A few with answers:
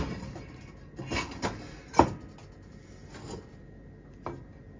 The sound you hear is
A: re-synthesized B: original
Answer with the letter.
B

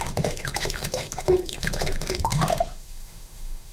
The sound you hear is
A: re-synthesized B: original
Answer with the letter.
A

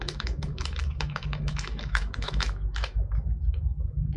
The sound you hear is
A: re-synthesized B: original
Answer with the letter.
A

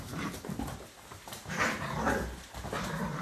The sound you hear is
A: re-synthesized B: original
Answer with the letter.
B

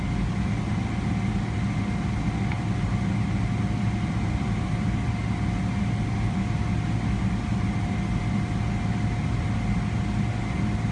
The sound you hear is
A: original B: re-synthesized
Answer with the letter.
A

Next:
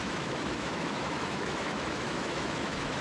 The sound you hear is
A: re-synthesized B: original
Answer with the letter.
A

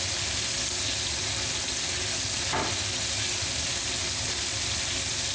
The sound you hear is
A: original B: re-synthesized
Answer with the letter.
A